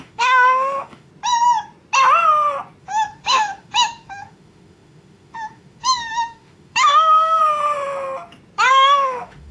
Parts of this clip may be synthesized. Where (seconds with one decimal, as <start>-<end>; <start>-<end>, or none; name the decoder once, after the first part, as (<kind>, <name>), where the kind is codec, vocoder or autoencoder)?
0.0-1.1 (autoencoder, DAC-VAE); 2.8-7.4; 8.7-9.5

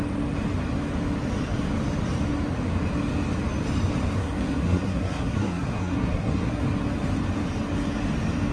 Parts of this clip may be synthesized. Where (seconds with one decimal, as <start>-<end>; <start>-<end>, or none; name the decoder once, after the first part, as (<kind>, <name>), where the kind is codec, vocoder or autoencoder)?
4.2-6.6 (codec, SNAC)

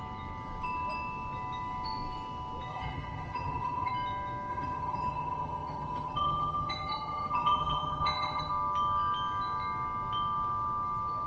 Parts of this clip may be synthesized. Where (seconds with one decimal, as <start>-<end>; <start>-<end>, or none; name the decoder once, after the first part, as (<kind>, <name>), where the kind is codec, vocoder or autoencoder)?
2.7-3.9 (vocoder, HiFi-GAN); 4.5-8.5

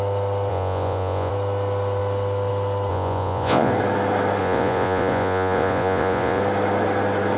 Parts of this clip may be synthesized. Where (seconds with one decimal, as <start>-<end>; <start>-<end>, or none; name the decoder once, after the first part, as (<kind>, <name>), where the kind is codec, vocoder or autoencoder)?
0.5-1.3 (vocoder, Vocos); 2.9-3.7; 4.4-6.4

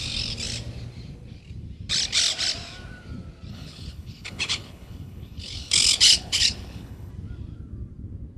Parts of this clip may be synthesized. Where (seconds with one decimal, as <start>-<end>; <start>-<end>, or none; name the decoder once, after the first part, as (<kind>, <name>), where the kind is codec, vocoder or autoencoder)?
3.5-7.1 (codec, HILCodec)

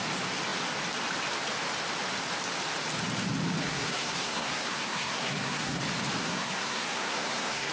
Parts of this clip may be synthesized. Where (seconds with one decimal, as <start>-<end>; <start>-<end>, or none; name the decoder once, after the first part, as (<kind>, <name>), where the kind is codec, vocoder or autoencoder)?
3.6-5.8 (codec, SNAC); 6.2-7.7